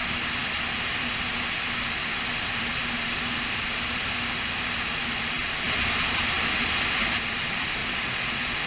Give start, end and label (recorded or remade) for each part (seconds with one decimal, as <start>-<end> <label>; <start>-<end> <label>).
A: 0.0-7.8 recorded; 7.8-8.7 remade